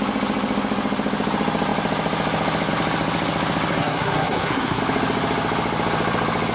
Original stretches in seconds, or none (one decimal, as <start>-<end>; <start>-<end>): 0.0-3.8; 4.8-6.5